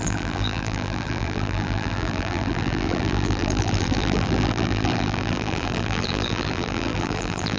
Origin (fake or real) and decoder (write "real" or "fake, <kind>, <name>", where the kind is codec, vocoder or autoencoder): fake, vocoder, BigVGAN v2